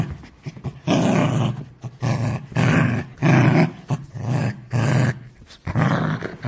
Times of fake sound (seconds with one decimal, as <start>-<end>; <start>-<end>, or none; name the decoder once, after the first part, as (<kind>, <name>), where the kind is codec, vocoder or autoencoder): none